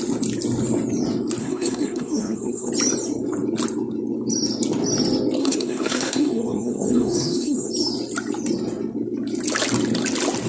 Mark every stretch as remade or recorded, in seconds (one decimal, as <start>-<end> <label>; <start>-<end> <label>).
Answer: 0.0-1.4 recorded; 1.4-2.7 remade; 2.7-5.4 recorded; 5.4-7.7 remade; 7.7-10.5 recorded